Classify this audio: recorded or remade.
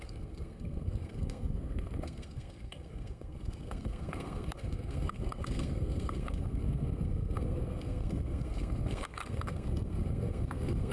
remade